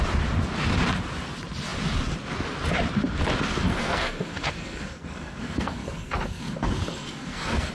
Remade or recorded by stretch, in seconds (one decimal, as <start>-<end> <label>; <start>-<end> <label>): 0.0-3.7 recorded; 3.7-7.7 remade

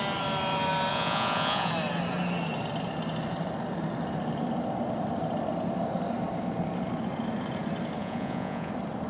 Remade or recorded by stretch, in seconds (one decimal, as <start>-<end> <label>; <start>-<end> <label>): 0.0-0.9 recorded; 0.9-1.7 remade; 1.7-8.0 recorded; 8.0-8.7 remade; 8.7-9.1 recorded

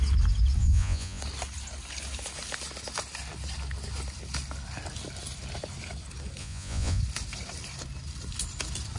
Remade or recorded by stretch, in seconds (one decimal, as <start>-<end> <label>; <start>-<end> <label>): 0.0-0.6 recorded; 0.6-1.2 remade; 1.2-6.4 recorded; 6.4-7.0 remade; 7.0-9.0 recorded

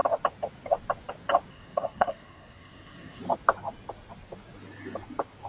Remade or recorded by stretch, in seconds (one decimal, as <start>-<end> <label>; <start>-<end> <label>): 0.0-1.5 recorded; 1.5-3.2 remade; 3.2-5.5 recorded

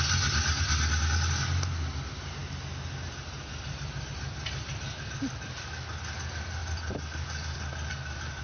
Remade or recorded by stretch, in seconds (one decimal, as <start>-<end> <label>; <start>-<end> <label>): 0.0-8.4 recorded

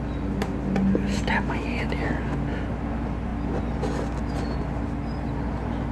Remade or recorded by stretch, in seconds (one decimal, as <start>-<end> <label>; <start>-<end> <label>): 0.0-5.9 recorded

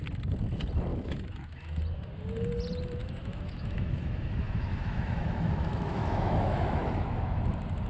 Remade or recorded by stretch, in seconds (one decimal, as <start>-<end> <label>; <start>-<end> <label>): 0.0-0.9 recorded; 0.9-1.8 remade; 1.8-3.0 recorded; 3.0-7.4 remade; 7.4-7.9 recorded

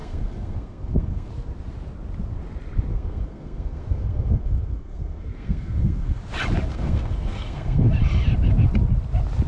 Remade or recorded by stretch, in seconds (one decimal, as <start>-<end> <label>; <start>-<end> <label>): 0.0-1.3 remade; 1.3-2.9 recorded; 2.9-6.2 remade; 6.2-6.7 recorded; 6.7-7.9 remade; 7.9-9.5 recorded